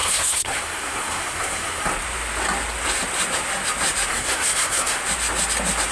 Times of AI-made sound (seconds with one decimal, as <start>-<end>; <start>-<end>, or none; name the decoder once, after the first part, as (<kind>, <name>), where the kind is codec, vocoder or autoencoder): 0.0-1.9 (codec, SNAC); 4.1-5.0